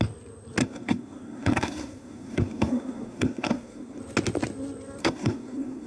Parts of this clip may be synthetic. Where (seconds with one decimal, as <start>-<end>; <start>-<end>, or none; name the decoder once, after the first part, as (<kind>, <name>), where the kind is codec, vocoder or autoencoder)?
0.6-4.0 (codec, SNAC); 5.0-5.9